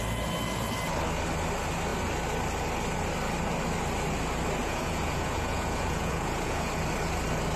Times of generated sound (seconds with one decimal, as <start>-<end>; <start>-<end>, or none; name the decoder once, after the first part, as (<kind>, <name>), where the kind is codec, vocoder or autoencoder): 4.6-6.7 (vocoder, Vocos)